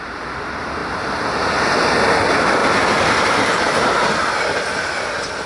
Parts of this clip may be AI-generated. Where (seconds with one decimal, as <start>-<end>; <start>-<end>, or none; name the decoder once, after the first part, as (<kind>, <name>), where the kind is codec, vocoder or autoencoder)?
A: 0.8-1.9 (vocoder, BigVGAN v2); 2.6-4.4